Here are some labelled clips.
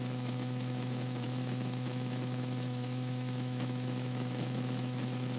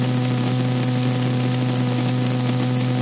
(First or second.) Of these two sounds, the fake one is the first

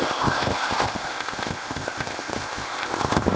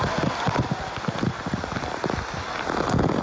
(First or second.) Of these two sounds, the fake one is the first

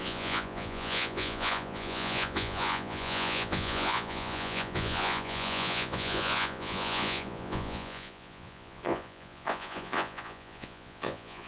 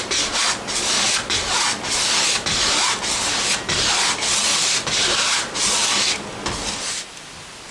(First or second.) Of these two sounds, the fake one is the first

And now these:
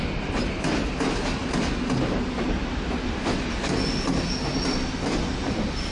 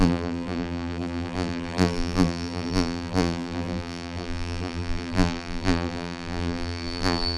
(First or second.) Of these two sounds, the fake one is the second